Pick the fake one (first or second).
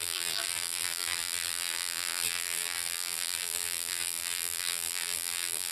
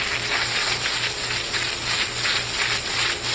first